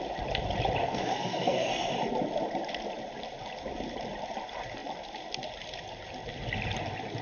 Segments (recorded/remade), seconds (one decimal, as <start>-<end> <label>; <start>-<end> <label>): 0.0-0.8 recorded; 0.8-1.7 remade; 1.7-7.2 recorded